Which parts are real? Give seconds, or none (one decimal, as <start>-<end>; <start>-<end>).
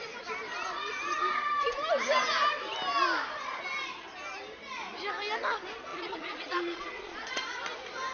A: 0.0-5.9; 7.4-8.1